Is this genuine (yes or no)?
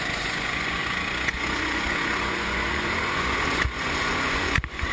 no